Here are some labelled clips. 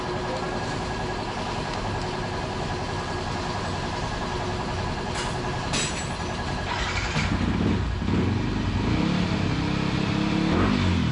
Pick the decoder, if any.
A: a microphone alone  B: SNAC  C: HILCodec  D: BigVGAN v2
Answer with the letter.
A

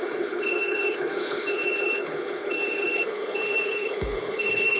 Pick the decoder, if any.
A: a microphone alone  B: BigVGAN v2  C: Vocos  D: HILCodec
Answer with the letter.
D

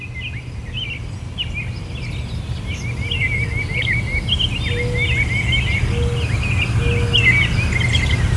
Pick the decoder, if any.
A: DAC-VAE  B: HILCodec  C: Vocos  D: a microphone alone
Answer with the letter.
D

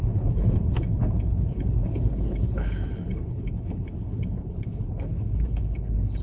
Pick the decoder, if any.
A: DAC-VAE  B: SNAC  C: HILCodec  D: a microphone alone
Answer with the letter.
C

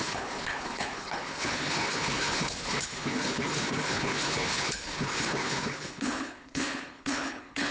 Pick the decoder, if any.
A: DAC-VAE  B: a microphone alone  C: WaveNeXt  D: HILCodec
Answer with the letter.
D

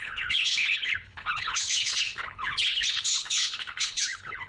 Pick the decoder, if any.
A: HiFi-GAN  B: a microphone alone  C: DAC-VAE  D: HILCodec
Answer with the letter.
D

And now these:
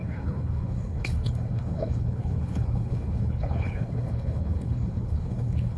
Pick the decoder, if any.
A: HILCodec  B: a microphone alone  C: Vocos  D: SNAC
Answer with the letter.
A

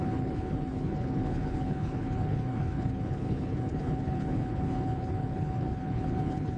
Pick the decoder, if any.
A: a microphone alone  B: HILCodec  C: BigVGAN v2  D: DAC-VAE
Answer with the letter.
B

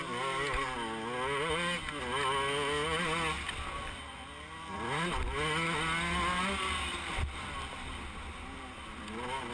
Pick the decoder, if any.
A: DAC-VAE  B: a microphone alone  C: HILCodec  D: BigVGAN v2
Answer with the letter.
B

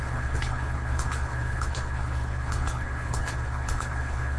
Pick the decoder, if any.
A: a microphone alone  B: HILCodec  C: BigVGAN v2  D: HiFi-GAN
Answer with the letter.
B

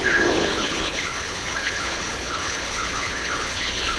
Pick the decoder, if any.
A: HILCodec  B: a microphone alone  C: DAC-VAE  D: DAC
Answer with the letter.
A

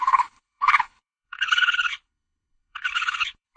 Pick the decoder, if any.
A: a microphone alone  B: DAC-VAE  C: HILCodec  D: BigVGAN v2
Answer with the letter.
C